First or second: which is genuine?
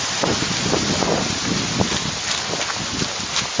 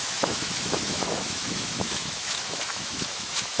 first